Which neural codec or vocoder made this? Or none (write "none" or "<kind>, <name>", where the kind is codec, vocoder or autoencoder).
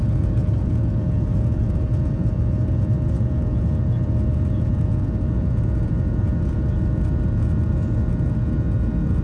vocoder, Vocos